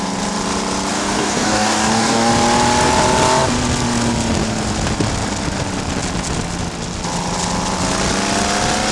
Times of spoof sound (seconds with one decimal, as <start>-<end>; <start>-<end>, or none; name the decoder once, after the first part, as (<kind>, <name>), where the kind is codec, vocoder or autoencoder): 0.9-2.3 (codec, DAC)